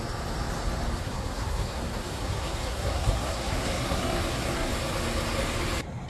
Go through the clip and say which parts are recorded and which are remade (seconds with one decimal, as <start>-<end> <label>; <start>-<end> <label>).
0.0-1.0 recorded; 1.0-4.7 remade; 4.7-6.1 recorded

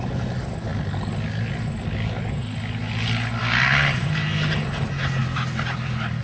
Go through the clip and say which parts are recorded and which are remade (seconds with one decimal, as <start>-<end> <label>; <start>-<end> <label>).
0.0-6.2 recorded

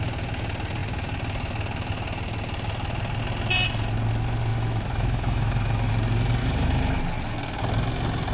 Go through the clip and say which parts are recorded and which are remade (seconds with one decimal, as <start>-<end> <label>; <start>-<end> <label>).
0.0-4.5 recorded; 4.5-5.9 remade; 5.9-6.4 recorded; 6.4-7.0 remade; 7.0-8.3 recorded

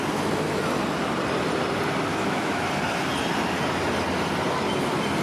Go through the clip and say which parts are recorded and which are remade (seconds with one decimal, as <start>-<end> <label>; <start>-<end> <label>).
0.0-2.1 recorded; 2.1-2.7 remade; 2.7-5.2 recorded

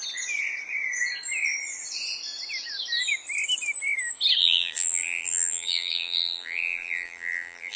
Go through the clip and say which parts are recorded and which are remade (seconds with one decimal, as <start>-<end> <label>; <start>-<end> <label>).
0.0-4.4 recorded; 4.4-7.8 remade